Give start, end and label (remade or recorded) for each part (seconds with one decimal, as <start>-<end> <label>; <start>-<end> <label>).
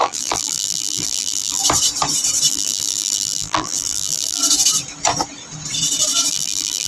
0.0-1.6 remade; 1.6-2.5 recorded; 2.5-4.4 remade; 4.4-6.3 recorded; 6.3-6.9 remade